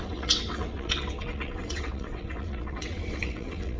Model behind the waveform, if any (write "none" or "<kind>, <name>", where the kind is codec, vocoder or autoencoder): vocoder, WaveNeXt